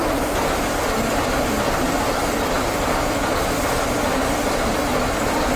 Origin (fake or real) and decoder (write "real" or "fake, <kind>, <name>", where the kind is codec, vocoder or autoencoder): real